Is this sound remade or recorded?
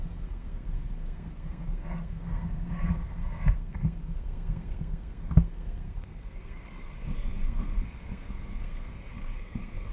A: remade